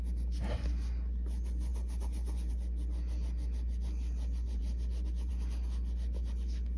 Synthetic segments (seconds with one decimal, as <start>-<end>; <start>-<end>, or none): none

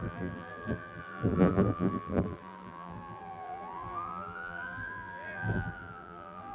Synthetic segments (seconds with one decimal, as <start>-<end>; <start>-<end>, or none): 0.0-6.5

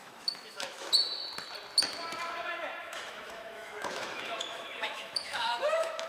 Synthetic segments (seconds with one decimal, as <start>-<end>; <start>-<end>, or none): 0.0-0.9; 2.8-6.1